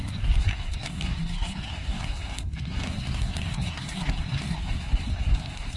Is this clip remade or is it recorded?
remade